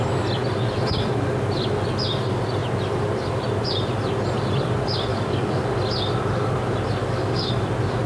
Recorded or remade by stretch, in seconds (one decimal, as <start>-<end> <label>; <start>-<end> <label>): 0.0-5.1 recorded; 5.1-5.6 remade; 5.6-7.0 recorded; 7.0-7.5 remade; 7.5-8.1 recorded